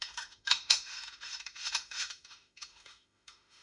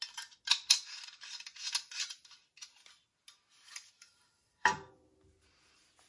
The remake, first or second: first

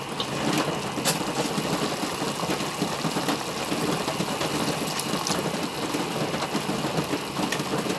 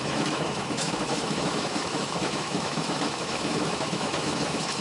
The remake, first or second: second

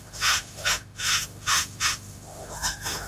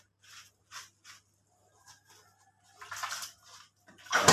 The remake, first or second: first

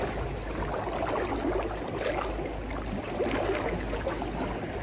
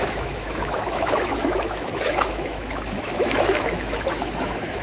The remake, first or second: second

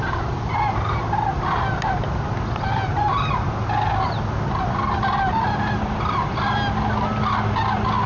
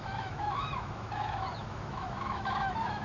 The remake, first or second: second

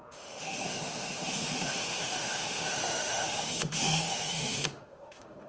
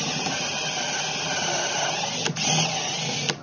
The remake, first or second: first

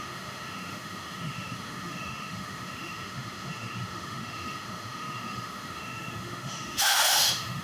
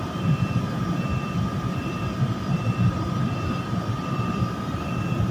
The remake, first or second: first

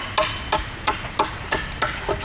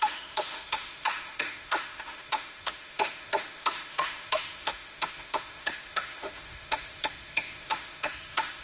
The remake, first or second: second